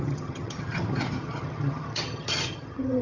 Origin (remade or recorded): remade